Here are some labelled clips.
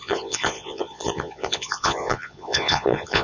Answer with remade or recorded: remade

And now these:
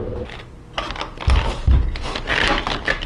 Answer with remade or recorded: recorded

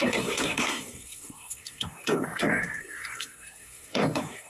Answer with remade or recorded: remade